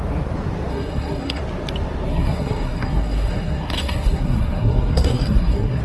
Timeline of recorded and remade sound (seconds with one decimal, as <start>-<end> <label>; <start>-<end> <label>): 0.0-0.7 recorded; 0.7-1.4 remade; 1.4-2.1 recorded; 2.1-5.8 remade